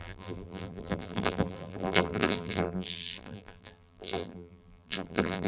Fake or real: fake